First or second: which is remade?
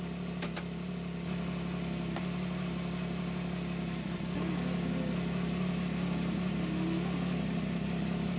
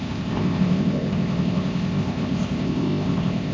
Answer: second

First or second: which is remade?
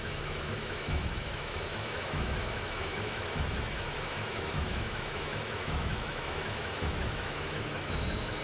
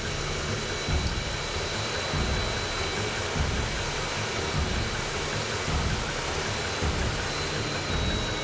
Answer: first